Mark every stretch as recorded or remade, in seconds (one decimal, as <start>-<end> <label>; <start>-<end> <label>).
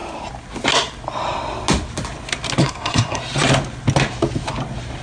0.0-2.6 recorded; 2.6-3.2 remade; 3.2-5.0 recorded